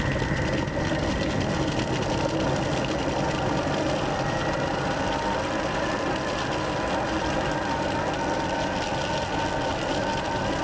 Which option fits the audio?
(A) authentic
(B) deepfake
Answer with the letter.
A